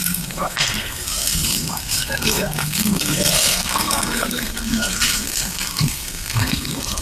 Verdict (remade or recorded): remade